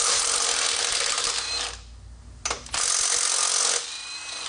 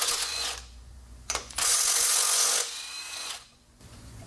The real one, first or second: first